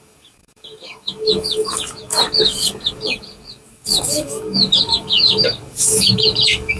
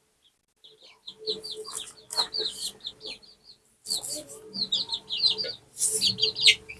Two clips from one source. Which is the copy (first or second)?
first